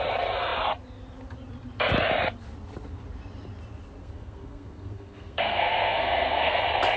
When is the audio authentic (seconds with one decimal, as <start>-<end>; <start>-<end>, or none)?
0.0-4.0; 6.6-7.0